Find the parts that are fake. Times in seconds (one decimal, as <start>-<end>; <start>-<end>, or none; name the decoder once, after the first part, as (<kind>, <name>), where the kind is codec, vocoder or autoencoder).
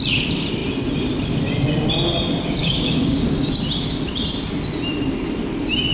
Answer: 2.6-3.5 (codec, DAC)